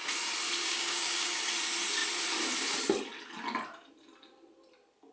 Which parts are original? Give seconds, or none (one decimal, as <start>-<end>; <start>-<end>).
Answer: 0.0-0.6; 1.4-5.1